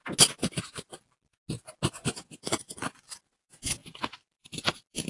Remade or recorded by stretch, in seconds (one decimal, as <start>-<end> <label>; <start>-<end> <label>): 0.0-1.9 recorded; 1.9-3.2 remade; 3.2-5.1 recorded